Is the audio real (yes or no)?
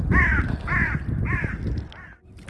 yes